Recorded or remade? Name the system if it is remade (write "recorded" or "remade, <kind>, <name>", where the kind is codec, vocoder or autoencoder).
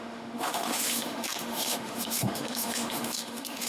remade, autoencoder, DAC-VAE